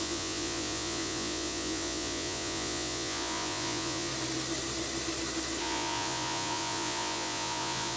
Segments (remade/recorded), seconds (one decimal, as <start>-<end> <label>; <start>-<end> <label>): 0.0-4.1 remade; 4.1-5.6 recorded; 5.6-8.0 remade